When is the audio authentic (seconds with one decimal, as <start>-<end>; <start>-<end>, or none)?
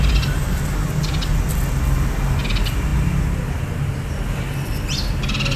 0.0-5.6